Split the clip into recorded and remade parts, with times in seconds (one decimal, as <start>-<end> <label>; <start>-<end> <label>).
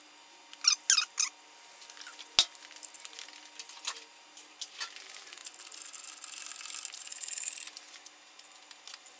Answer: 0.0-9.2 recorded